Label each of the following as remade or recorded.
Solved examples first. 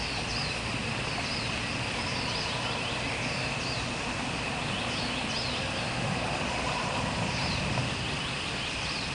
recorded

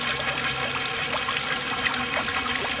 remade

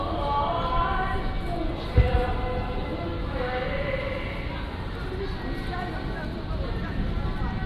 recorded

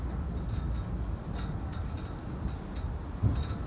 recorded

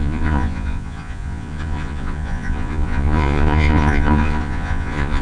remade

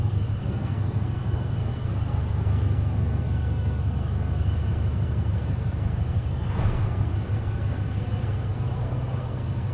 remade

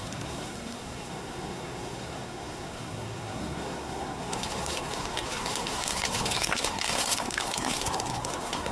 remade